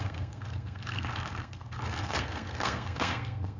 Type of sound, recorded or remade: remade